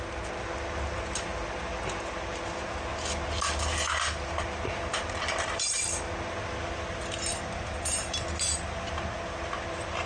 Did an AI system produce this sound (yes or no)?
no